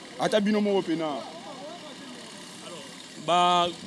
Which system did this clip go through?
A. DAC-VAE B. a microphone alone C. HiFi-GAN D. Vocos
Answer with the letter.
B